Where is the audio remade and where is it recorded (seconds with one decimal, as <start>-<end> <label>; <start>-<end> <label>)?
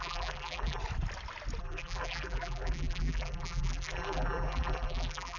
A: 0.0-0.8 remade; 0.8-1.6 recorded; 1.6-5.4 remade